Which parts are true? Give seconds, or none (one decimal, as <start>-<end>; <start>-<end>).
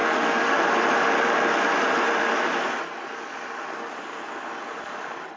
0.6-5.4